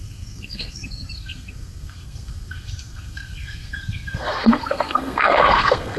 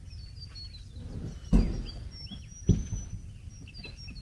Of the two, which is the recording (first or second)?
second